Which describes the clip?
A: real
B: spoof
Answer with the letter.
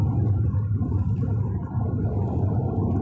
A